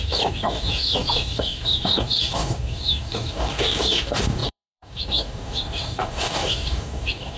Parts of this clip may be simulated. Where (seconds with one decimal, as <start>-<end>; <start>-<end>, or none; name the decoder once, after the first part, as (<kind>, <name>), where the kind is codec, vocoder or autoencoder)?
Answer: 0.0-7.4 (codec, DAC)